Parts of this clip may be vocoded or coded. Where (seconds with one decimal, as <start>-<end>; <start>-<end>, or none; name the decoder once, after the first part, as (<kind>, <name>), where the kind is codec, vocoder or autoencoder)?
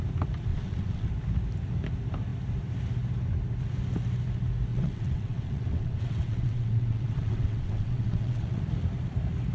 0.5-1.1 (vocoder, WaveNeXt); 4.7-8.6